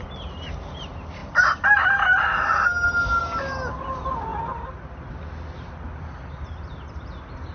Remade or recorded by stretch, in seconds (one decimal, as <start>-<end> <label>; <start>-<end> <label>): 0.0-7.5 recorded